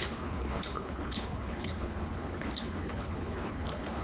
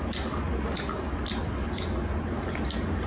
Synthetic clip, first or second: first